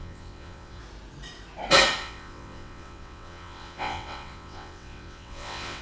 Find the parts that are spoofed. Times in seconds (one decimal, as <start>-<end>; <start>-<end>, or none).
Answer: 0.0-0.8; 2.0-5.8